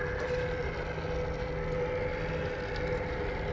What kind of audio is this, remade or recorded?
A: recorded